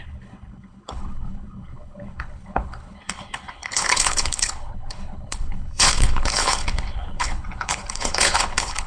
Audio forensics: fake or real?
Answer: fake